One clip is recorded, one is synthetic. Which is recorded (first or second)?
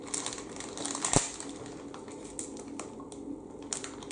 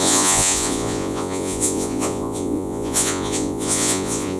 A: first